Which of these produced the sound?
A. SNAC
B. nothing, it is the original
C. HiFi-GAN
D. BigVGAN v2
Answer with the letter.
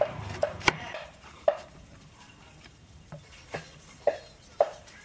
D